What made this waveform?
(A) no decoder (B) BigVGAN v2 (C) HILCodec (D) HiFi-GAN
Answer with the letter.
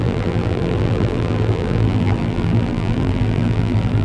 B